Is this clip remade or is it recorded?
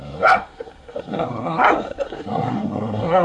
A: remade